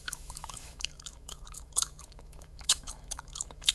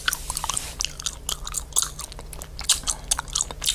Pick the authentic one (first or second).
second